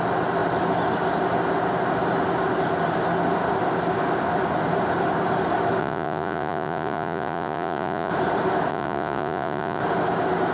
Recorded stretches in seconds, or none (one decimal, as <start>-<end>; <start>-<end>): 0.0-5.8; 8.1-8.7; 9.8-10.5